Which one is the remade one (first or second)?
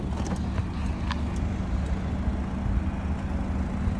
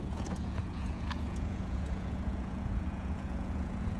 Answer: second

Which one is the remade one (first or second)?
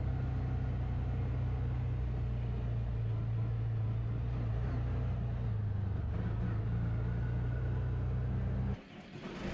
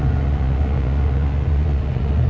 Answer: second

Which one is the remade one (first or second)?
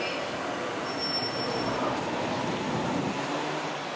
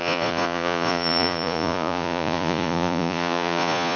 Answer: second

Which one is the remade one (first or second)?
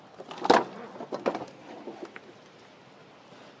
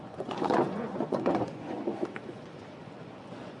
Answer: second